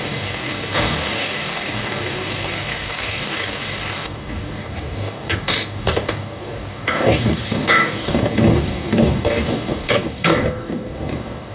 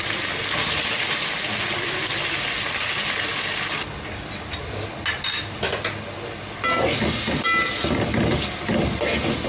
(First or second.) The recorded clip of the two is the second